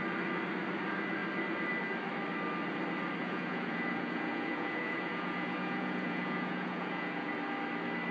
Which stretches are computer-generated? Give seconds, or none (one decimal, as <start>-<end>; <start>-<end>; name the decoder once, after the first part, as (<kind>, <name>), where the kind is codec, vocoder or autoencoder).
3.2-7.3 (vocoder, Vocos)